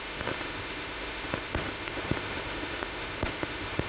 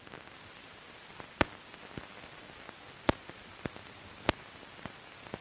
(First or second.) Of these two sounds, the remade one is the first